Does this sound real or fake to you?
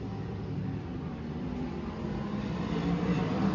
fake